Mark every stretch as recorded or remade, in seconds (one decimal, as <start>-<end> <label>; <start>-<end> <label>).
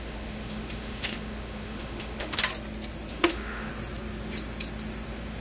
0.0-2.4 remade; 2.4-3.1 recorded; 3.1-3.7 remade; 3.7-5.4 recorded